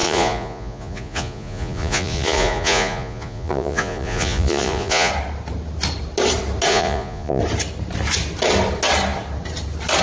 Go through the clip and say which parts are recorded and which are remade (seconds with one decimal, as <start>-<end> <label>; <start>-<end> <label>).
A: 0.0-5.1 remade; 5.1-6.7 recorded; 6.7-7.4 remade; 7.4-10.0 recorded